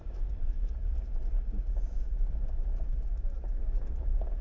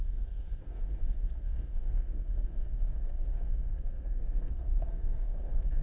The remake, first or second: second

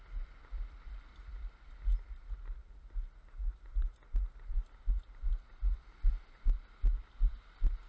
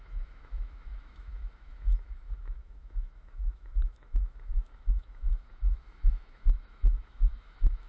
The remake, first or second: second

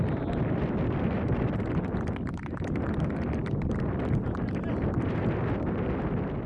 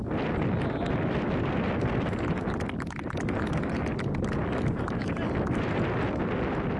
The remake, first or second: first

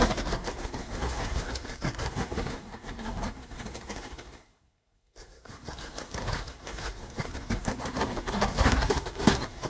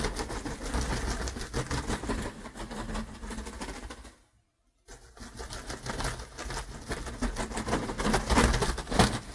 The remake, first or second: first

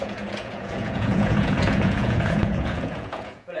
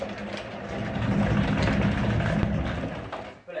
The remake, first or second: first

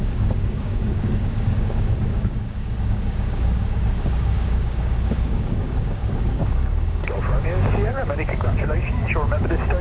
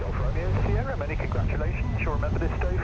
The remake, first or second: first